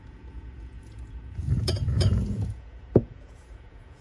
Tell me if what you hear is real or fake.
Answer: fake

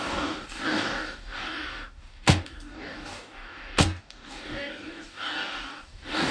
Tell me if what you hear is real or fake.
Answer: fake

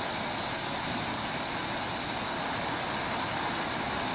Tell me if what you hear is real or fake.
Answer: real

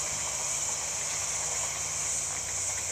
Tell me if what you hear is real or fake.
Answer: real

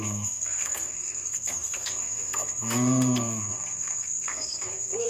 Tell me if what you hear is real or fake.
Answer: fake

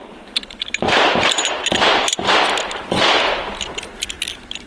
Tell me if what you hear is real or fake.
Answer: real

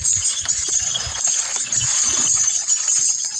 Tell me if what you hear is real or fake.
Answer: fake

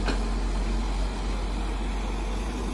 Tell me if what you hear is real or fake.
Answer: real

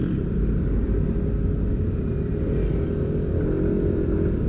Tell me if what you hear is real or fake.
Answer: real